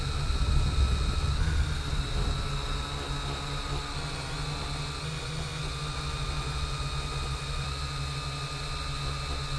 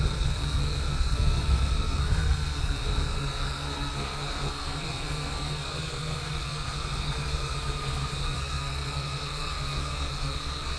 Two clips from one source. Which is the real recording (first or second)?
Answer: first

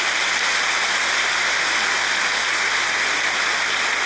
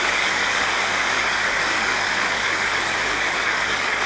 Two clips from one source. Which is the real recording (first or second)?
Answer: first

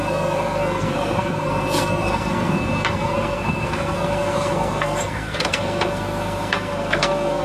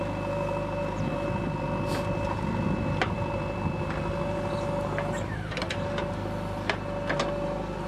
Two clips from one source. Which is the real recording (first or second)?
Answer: second